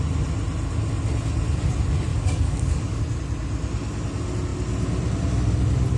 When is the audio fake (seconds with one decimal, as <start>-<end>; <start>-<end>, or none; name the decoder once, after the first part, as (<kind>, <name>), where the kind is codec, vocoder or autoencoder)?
2.1-3.0 (codec, DAC)